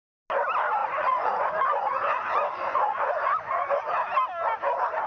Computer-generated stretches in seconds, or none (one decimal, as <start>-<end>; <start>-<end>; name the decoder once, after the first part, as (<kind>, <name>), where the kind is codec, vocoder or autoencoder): 0.8-3.9 (vocoder, Vocos)